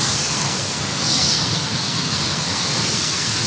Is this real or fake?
fake